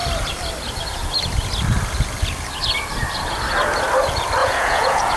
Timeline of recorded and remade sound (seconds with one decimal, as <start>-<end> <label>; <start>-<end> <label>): 0.0-4.4 recorded; 4.4-5.2 remade